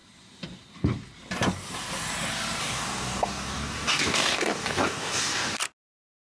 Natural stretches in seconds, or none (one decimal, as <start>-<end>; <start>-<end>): 0.0-2.6; 5.6-6.2